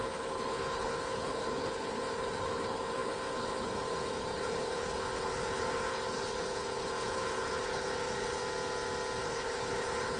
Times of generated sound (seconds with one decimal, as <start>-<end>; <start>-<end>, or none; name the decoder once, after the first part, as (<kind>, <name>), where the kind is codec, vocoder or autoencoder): 0.0-8.4 (codec, HILCodec); 9.2-10.2